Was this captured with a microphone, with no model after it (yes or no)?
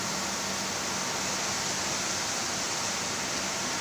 yes